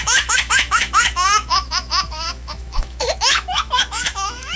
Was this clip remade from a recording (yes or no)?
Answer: yes